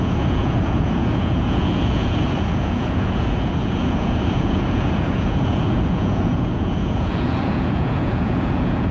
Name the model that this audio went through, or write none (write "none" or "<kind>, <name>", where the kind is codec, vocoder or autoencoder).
vocoder, Vocos